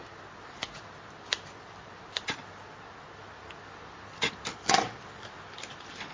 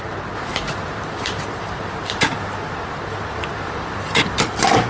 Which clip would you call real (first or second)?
first